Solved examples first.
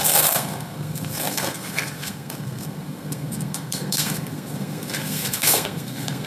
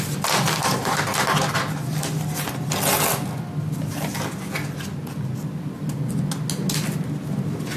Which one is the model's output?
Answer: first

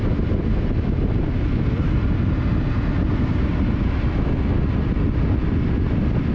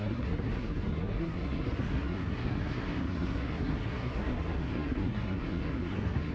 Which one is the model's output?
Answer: second